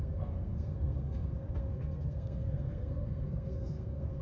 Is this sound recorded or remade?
remade